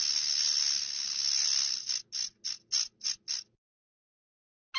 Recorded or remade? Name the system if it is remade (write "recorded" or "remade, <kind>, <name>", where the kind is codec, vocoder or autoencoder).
recorded